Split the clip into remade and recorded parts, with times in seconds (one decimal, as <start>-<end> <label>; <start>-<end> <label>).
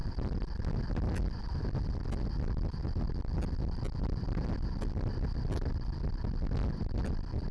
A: 0.0-7.5 remade